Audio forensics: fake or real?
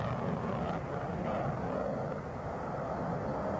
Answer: real